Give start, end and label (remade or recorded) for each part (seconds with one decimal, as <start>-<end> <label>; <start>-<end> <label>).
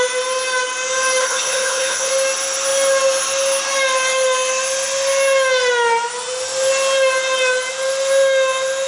0.0-1.2 recorded; 1.2-2.1 remade; 2.1-8.9 recorded